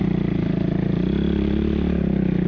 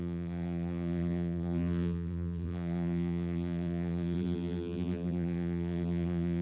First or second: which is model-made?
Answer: second